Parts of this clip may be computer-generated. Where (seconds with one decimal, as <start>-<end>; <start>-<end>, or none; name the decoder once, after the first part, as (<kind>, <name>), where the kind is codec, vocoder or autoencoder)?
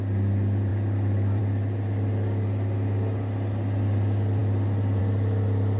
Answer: 0.7-1.4 (vocoder, BigVGAN v2)